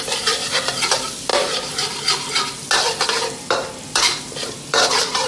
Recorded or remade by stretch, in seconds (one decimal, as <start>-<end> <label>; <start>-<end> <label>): 0.0-1.3 remade; 1.3-4.5 recorded; 4.5-5.3 remade